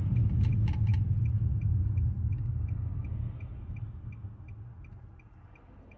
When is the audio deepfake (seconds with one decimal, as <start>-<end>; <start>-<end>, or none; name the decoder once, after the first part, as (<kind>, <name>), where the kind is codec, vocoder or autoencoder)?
none